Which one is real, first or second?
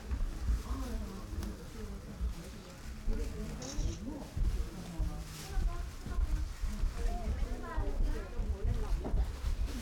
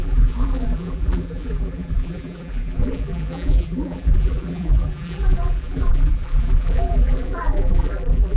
first